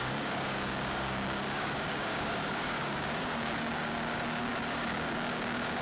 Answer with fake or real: fake